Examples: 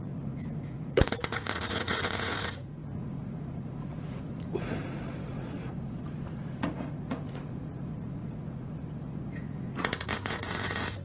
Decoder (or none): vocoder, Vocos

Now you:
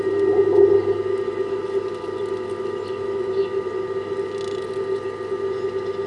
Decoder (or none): none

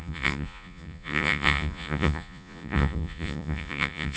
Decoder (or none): vocoder, Vocos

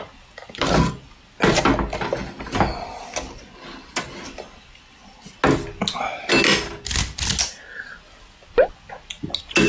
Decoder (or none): none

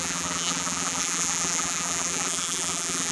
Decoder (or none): vocoder, BigVGAN v2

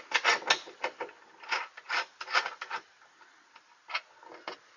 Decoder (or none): none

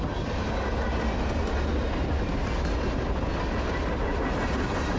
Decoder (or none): none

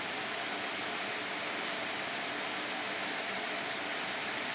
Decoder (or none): none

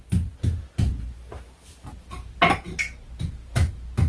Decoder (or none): none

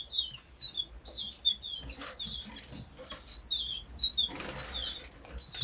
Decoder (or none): none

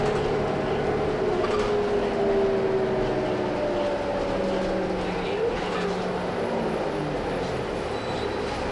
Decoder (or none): none